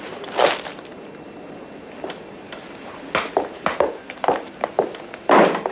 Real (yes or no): yes